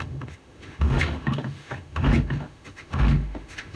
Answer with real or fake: fake